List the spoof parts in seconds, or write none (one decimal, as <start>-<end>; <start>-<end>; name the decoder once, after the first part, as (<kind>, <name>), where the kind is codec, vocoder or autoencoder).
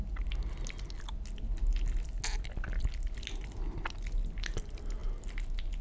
none